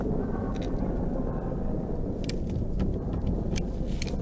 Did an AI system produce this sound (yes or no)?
no